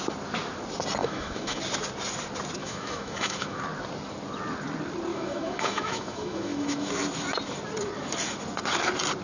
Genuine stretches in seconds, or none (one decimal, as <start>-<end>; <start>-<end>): 0.0-1.0; 1.6-2.6; 3.6-5.1; 6.9-9.2